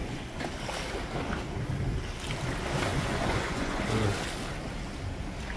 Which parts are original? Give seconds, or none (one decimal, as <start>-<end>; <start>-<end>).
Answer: 0.5-2.9; 3.8-5.6